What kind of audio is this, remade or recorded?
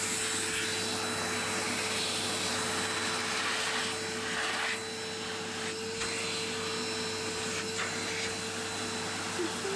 recorded